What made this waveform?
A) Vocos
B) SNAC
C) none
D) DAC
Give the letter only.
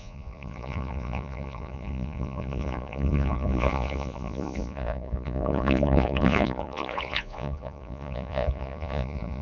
A